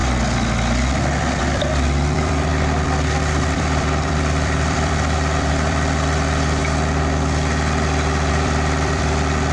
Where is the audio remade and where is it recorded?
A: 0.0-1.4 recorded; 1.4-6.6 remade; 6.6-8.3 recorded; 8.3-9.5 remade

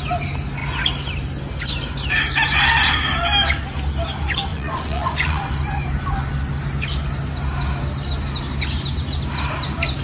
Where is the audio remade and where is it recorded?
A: 0.0-4.5 recorded; 4.5-5.5 remade; 5.5-10.0 recorded

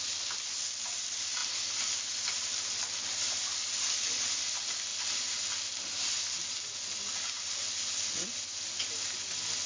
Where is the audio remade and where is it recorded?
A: 0.0-9.7 recorded

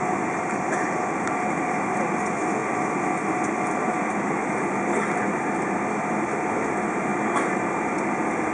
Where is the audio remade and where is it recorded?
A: 0.0-8.5 recorded

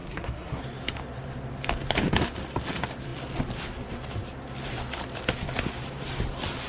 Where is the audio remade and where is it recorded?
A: 0.0-0.6 remade; 0.6-6.7 recorded

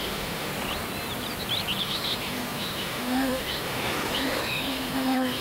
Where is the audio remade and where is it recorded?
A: 0.0-0.5 remade; 0.5-1.8 recorded; 1.8-5.4 remade